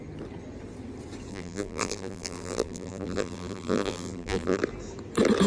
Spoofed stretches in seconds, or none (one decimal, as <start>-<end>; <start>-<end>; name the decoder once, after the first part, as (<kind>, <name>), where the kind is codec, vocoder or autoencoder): 1.3-4.6 (vocoder, BigVGAN v2)